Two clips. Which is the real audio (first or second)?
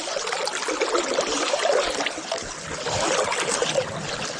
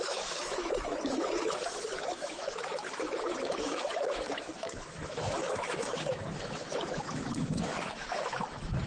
first